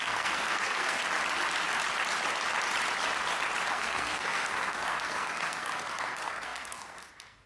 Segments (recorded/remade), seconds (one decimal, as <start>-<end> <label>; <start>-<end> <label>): 0.0-1.0 remade; 1.0-3.7 recorded; 3.7-7.5 remade